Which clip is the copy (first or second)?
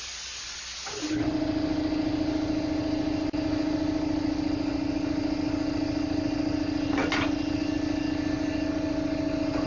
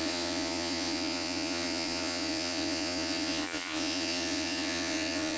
second